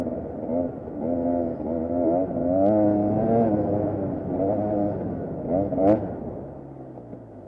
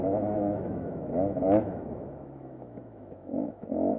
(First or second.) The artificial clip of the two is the second